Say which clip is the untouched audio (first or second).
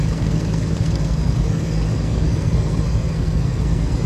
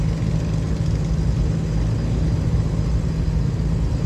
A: second